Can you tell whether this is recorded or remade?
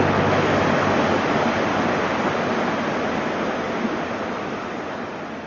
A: recorded